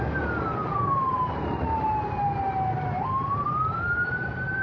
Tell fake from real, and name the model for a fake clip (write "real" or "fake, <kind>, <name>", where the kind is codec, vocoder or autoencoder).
real